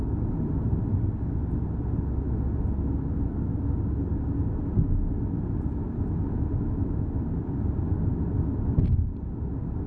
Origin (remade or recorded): recorded